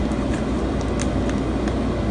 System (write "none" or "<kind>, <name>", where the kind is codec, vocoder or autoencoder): none